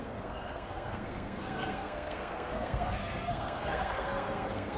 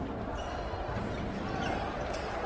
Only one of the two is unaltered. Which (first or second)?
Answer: second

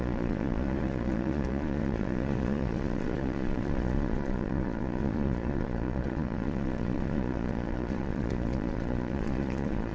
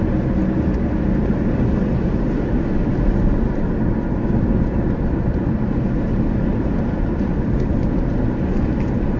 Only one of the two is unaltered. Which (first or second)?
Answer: second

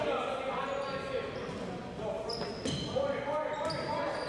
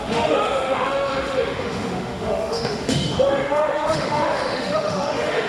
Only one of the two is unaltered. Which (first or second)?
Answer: first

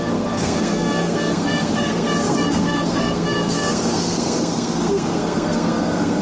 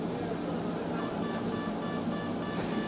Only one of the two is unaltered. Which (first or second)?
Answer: second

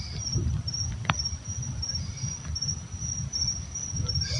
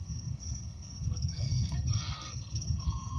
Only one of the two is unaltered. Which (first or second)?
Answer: first